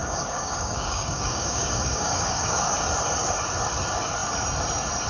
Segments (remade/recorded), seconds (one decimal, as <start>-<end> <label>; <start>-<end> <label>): 0.0-2.7 remade; 2.7-5.1 recorded